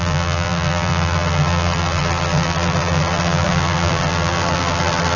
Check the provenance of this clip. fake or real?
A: fake